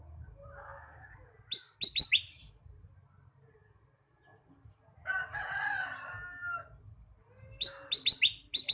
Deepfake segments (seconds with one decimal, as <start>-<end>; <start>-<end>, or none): none